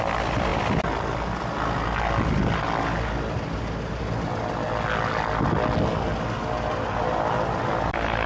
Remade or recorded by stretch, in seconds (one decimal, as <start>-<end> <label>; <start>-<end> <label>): 0.0-8.3 recorded